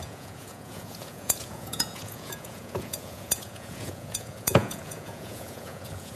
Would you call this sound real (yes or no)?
no